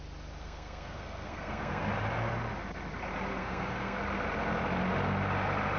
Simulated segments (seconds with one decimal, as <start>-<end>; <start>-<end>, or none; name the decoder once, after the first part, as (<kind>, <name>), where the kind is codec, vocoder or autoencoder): 0.4-1.8 (codec, SNAC); 3.4-4.0